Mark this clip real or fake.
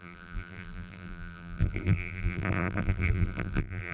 fake